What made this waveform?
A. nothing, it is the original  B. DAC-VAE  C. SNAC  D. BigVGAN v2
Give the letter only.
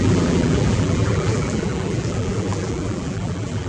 D